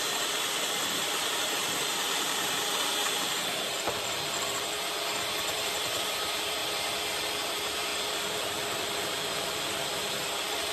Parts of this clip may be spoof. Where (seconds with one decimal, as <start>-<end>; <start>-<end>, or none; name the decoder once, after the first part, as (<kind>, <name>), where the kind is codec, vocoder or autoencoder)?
0.0-6.6 (vocoder, BigVGAN v2); 7.3-10.7